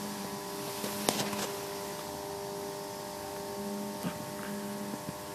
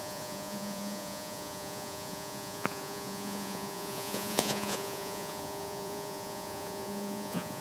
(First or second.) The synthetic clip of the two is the second